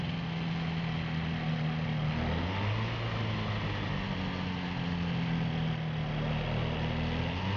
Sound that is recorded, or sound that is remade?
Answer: recorded